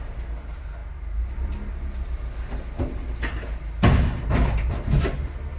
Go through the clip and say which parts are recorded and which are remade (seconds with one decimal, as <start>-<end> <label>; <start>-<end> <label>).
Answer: 0.0-5.6 recorded